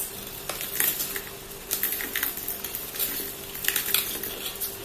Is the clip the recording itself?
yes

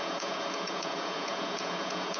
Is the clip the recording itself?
no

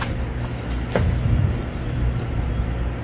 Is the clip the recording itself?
yes